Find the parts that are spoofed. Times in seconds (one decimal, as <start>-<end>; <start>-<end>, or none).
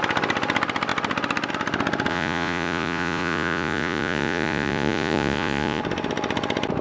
2.1-5.8